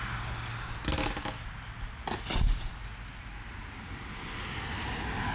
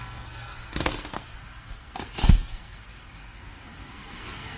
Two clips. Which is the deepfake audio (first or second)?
second